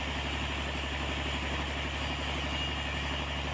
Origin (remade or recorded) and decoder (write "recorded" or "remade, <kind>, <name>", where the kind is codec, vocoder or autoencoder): recorded